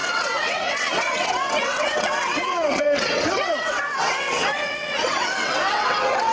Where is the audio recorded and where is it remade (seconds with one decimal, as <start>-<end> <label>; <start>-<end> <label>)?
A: 0.0-6.3 remade